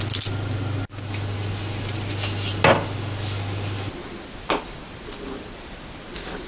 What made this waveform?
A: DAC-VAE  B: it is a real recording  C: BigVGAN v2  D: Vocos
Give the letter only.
B